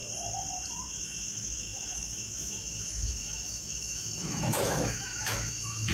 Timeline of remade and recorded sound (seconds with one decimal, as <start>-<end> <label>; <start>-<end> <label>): 0.0-0.9 recorded; 0.9-5.9 remade